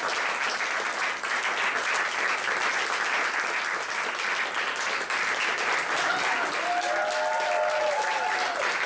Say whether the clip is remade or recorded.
recorded